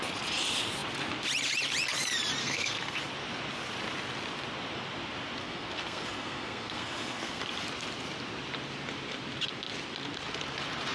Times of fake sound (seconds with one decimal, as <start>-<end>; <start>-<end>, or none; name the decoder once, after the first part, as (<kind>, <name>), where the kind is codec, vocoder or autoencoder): 2.4-3.0 (codec, SNAC); 5.4-7.4